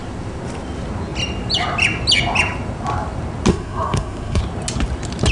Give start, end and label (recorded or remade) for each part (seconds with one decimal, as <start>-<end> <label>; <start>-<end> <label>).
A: 0.0-3.5 recorded; 3.5-4.4 remade; 4.4-5.3 recorded